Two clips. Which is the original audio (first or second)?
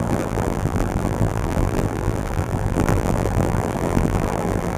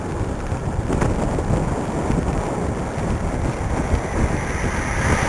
second